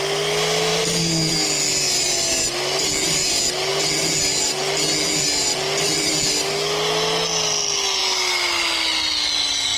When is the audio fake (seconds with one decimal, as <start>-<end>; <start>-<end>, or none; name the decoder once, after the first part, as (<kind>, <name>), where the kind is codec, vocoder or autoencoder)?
0.7-1.3 (vocoder, BigVGAN v2)